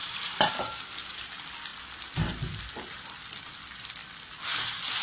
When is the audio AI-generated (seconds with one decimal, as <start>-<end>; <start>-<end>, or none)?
0.0-0.5